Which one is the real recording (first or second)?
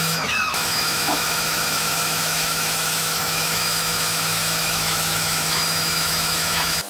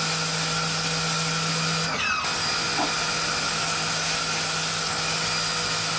second